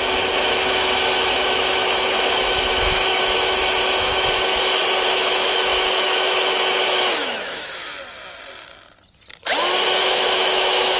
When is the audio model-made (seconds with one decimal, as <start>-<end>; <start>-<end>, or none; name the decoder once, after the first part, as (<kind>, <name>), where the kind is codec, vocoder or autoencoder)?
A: 0.0-4.5 (autoencoder, DAC-VAE); 5.1-7.9; 10.0-11.0